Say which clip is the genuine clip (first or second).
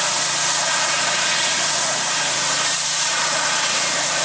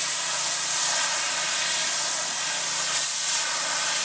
second